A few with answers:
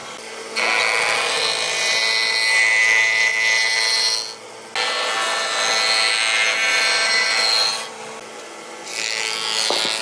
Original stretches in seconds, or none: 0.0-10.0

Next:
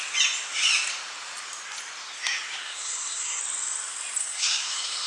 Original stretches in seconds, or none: 0.0-2.6; 3.4-4.2

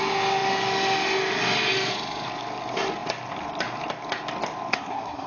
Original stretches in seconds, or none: 0.0-4.7

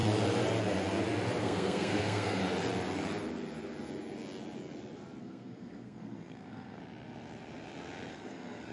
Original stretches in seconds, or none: 0.0-1.4; 2.4-5.2; 6.8-8.1

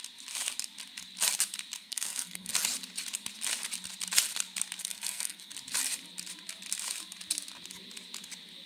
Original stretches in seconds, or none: 0.0-1.8; 2.5-4.8; 5.5-8.7

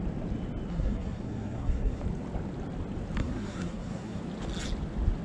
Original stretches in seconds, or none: 0.0-0.7; 2.0-3.2; 4.2-5.2

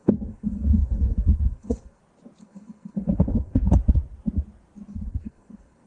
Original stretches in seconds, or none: 2.0-2.4; 3.7-4.9

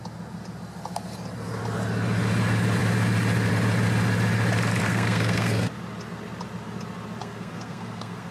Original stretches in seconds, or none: 0.0-4.8; 5.7-7.2